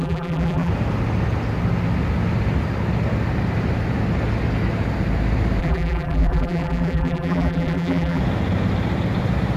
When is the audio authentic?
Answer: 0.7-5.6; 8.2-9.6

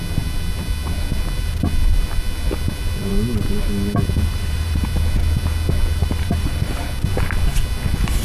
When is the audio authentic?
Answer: 0.0-4.3; 4.8-6.0; 6.8-8.2